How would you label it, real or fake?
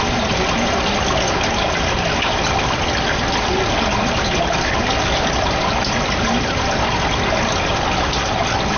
real